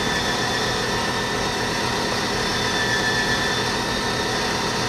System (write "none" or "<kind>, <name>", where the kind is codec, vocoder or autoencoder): none